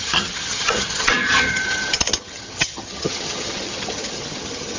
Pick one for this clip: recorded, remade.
remade